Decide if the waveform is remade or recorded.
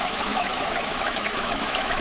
remade